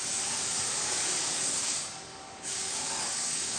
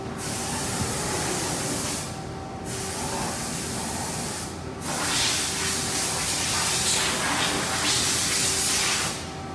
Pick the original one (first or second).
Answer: second